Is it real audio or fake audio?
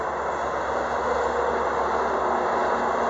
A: real